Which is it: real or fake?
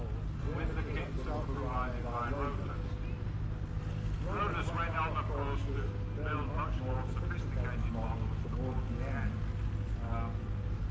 real